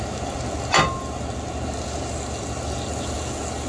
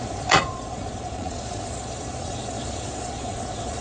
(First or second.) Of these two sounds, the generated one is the second